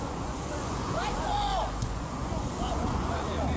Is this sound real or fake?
fake